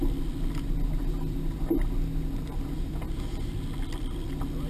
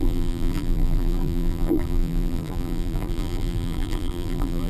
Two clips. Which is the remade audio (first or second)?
second